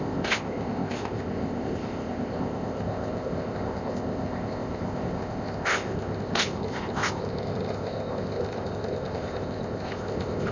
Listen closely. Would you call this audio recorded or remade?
remade